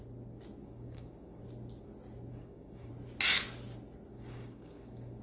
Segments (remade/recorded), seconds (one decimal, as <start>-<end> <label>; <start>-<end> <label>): 0.0-0.6 recorded; 0.6-1.4 remade; 1.4-2.3 recorded; 2.3-2.9 remade; 2.9-4.1 recorded; 4.1-5.2 remade